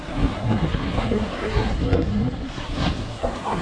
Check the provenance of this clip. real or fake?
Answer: fake